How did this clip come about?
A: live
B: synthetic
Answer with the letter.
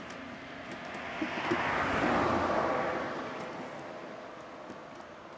A